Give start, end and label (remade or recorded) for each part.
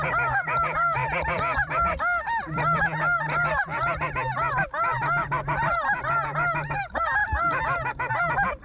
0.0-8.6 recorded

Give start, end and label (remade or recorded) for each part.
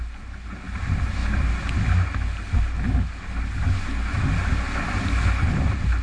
0.0-6.0 recorded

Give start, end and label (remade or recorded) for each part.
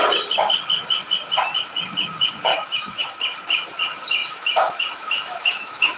0.0-2.5 recorded; 2.5-3.2 remade; 3.2-4.2 recorded; 4.2-6.0 remade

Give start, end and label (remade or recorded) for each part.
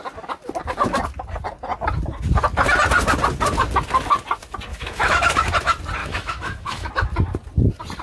0.0-4.7 recorded; 4.7-5.5 remade; 5.5-6.0 recorded; 6.0-6.9 remade; 6.9-8.0 recorded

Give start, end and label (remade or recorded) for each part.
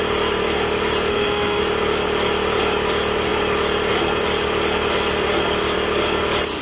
0.0-1.1 recorded; 1.1-1.6 remade; 1.6-6.6 recorded